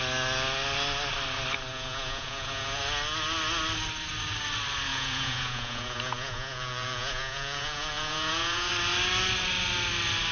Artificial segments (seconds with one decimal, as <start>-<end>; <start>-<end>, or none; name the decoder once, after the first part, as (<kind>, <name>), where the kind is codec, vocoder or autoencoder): 1.7-2.8 (vocoder, Vocos); 4.9-8.7